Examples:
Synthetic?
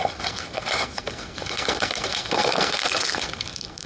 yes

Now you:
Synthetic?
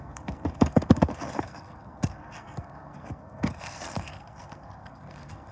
yes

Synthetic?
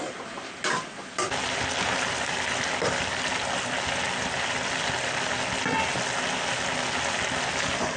no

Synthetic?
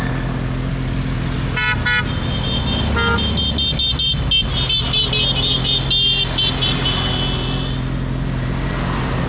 no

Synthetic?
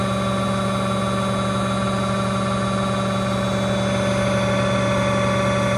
no